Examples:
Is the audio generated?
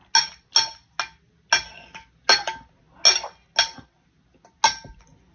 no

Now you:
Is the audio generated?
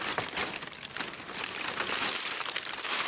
no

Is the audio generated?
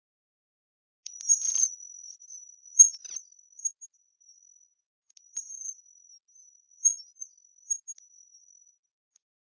no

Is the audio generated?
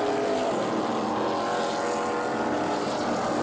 no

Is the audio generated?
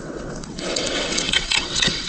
yes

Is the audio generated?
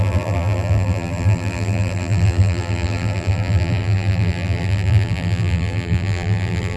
yes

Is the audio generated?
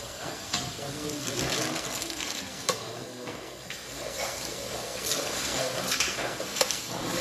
yes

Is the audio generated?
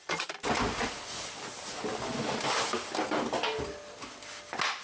no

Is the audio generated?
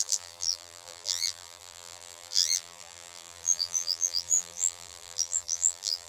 yes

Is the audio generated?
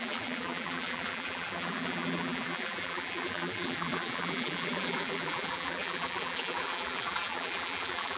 yes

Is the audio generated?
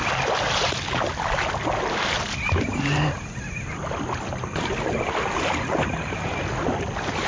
no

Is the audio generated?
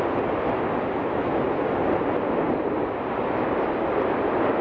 no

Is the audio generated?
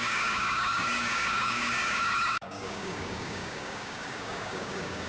yes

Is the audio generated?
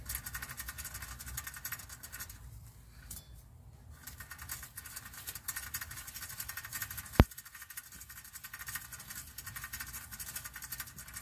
no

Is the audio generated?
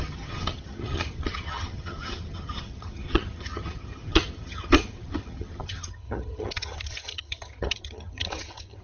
yes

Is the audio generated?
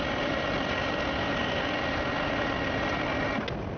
no